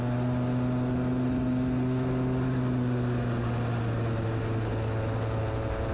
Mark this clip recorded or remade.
recorded